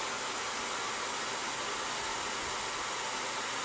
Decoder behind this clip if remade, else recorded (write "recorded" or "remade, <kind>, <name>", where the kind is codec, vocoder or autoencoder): recorded